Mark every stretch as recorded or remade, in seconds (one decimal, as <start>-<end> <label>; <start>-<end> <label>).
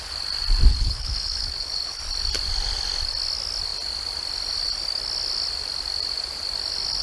0.0-0.7 recorded; 0.7-2.0 remade; 2.0-7.0 recorded